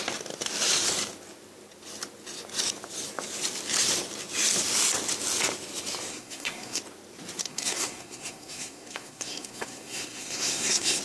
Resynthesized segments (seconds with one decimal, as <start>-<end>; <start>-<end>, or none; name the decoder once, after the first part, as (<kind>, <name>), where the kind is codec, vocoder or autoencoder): 6.1-6.8 (codec, SNAC); 7.4-11.0